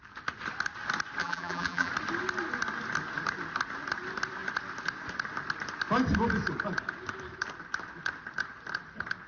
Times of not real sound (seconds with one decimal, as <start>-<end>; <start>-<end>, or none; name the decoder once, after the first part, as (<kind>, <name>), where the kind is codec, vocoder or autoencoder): 1.2-1.9 (vocoder, BigVGAN v2)